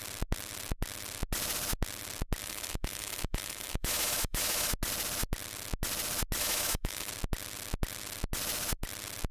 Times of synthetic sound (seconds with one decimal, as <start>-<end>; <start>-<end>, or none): 2.4-4.7; 6.4-7.1